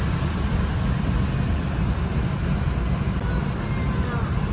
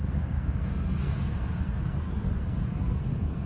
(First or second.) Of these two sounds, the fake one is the second